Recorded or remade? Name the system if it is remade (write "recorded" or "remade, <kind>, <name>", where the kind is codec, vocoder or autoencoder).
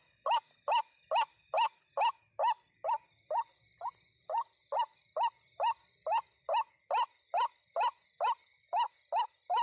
recorded